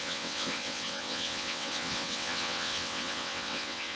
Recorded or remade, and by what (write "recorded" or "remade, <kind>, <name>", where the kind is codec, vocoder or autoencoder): remade, vocoder, WaveNeXt